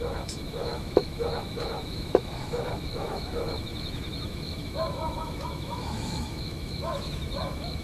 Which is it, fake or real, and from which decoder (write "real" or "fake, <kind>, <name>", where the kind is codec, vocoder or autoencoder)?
fake, autoencoder, DAC-VAE